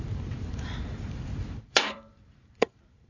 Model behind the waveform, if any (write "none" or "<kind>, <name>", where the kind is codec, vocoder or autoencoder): vocoder, BigVGAN v2